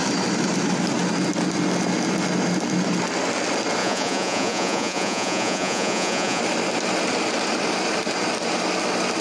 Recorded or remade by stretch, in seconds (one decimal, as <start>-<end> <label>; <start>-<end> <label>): 0.0-3.8 recorded; 3.8-6.4 remade; 6.4-9.2 recorded